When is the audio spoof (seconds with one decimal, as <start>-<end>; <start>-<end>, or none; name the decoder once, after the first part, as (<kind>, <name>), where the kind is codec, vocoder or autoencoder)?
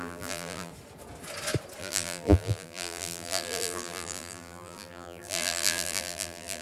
0.0-0.7 (vocoder, BigVGAN v2); 1.8-6.6